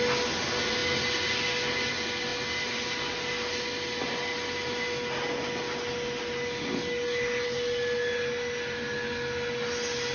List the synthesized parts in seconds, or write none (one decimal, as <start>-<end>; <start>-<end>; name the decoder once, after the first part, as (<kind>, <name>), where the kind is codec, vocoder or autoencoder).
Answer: none